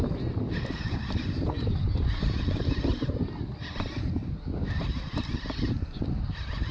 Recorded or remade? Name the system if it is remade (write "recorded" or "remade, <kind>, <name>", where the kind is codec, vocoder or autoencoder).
recorded